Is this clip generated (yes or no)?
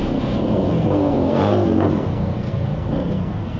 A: yes